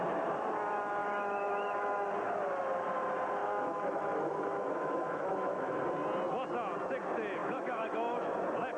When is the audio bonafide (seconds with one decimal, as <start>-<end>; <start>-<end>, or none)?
0.0-1.0; 2.1-3.4; 5.8-7.4; 8.3-8.8